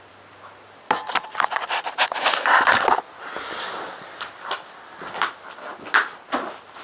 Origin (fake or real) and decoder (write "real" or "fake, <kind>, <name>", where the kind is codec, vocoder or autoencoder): real